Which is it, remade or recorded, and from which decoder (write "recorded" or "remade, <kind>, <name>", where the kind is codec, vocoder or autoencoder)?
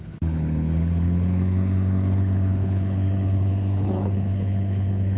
remade, codec, HILCodec